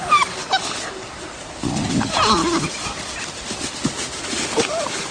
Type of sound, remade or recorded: recorded